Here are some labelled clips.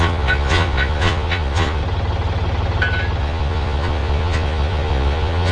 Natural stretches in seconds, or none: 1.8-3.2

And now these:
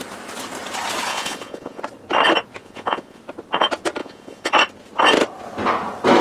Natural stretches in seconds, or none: 0.0-1.1; 1.8-2.6; 3.2-4.0; 4.5-6.2

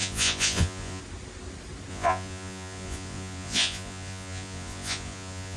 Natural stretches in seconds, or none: 1.0-1.9

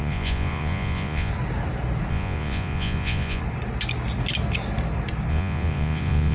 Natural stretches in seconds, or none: 1.3-2.1; 3.4-5.3

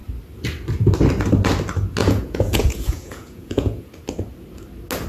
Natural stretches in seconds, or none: 0.0-2.0; 3.9-5.1